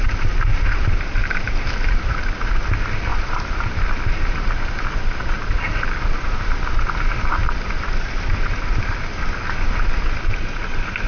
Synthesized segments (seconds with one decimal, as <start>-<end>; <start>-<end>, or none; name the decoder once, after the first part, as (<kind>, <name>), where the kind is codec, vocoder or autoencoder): 0.5-1.5 (vocoder, BigVGAN v2); 3.1-3.8